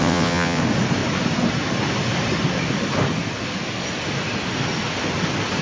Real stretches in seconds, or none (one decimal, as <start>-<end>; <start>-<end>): 0.6-5.6